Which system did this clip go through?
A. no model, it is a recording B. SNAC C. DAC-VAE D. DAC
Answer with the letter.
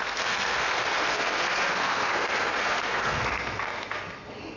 B